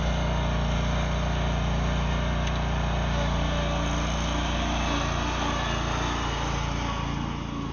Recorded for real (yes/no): yes